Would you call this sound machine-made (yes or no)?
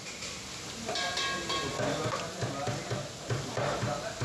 no